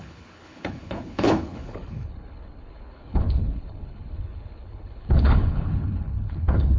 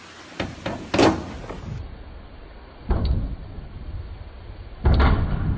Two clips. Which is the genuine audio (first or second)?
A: second